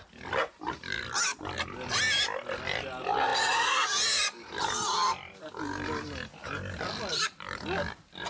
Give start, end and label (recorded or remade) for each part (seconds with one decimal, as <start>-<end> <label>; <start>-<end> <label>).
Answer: 0.0-8.3 recorded